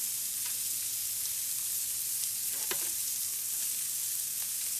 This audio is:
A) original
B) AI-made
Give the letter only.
A